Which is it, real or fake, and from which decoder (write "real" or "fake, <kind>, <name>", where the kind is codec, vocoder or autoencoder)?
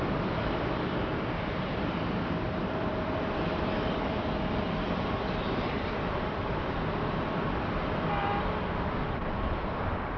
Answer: fake, vocoder, BigVGAN v2